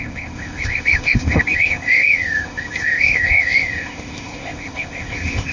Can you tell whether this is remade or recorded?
remade